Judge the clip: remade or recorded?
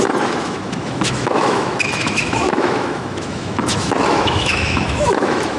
remade